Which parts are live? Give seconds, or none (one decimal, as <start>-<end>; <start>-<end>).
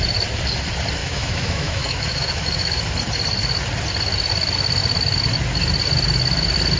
0.0-1.0; 2.8-6.8